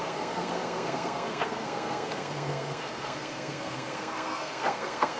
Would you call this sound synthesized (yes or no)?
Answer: yes